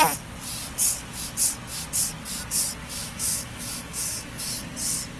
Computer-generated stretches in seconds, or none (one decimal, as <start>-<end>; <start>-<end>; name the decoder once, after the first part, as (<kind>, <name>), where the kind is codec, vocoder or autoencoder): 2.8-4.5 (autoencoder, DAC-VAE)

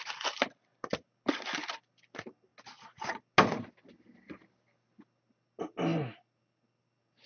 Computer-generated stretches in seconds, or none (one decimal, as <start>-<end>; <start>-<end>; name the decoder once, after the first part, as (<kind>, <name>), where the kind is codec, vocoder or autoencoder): none

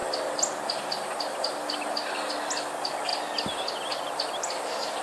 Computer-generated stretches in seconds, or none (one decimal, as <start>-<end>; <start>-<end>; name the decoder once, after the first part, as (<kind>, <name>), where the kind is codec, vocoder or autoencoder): none